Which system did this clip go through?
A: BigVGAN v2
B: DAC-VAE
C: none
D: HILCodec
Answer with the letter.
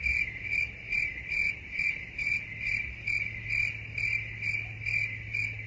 C